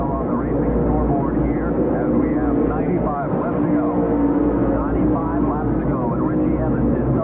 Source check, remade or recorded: recorded